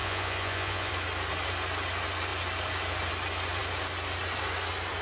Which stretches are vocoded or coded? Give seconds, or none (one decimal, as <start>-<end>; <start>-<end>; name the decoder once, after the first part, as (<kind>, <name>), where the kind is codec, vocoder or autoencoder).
0.0-0.9 (vocoder, Vocos)

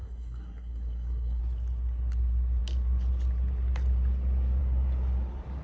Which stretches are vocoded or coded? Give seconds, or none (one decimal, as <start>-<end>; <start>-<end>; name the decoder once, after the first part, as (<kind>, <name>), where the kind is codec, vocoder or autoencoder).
0.0-1.4 (codec, SNAC)

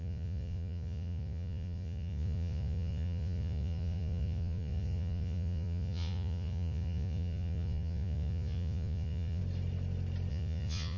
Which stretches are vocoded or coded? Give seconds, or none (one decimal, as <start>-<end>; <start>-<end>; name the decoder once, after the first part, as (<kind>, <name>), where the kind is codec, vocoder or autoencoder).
0.0-9.4 (vocoder, Vocos); 10.3-11.0